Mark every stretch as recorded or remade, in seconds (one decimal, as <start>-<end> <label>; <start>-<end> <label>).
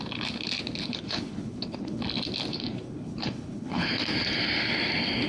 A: 0.0-0.8 recorded; 0.8-2.0 remade; 2.0-2.5 recorded; 2.5-3.9 remade; 3.9-5.3 recorded